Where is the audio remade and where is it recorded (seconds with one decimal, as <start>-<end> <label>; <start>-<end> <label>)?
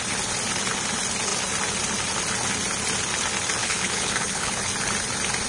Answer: 0.0-3.6 recorded; 3.6-4.6 remade; 4.6-5.5 recorded